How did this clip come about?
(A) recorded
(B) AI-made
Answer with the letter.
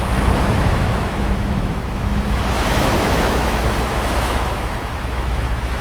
B